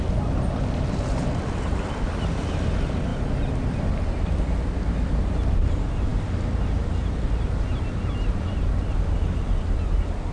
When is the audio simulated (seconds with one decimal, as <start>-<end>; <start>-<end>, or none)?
none